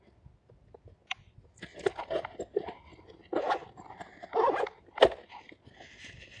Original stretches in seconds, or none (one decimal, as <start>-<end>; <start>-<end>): 0.0-6.4